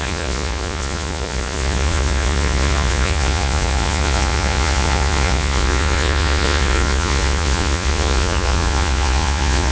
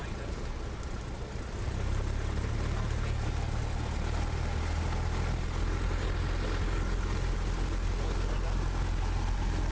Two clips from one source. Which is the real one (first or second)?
second